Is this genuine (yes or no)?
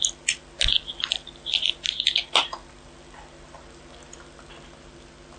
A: yes